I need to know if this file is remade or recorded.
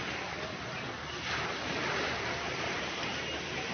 recorded